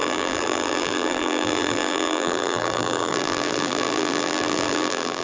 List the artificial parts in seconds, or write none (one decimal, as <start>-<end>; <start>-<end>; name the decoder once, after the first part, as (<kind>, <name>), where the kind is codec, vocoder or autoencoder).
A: 0.0-5.2 (vocoder, BigVGAN v2)